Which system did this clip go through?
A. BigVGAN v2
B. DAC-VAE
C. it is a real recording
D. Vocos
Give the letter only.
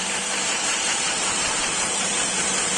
A